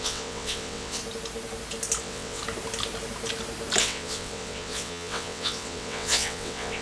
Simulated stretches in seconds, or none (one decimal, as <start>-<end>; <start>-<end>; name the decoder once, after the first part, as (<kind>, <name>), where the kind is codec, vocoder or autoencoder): 0.0-1.0 (vocoder, WaveNeXt); 2.0-2.4; 3.8-6.8